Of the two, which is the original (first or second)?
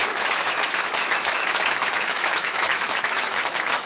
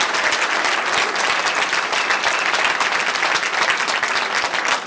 second